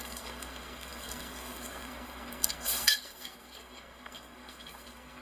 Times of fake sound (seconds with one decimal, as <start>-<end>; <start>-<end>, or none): 0.0-5.2